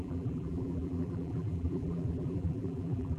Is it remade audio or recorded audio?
remade